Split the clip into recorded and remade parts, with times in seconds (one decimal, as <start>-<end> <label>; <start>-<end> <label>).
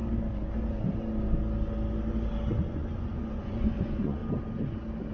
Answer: 0.0-2.6 recorded; 2.6-4.2 remade; 4.2-5.1 recorded